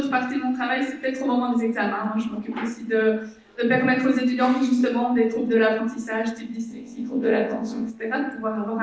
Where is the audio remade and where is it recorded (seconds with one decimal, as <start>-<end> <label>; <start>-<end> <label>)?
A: 0.0-6.7 recorded; 6.7-7.9 remade; 7.9-8.8 recorded